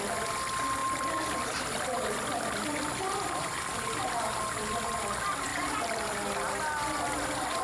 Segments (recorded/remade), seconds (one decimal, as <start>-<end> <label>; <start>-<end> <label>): 0.0-7.6 recorded